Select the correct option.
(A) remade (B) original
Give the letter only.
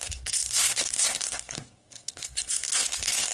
A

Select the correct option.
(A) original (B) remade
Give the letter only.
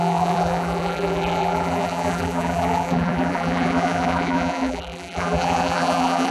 B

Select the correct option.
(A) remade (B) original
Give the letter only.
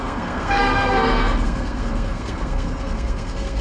A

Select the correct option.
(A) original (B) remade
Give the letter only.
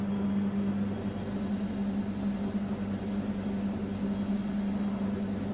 A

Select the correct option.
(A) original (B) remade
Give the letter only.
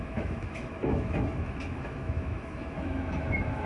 B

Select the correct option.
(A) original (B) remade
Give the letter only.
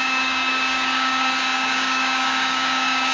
B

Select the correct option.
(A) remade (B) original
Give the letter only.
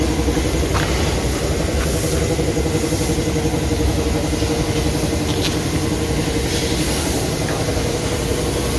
B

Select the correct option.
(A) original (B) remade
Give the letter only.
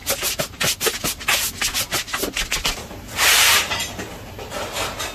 A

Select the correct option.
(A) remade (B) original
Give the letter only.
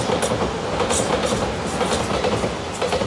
B